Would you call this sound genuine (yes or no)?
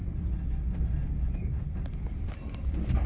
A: yes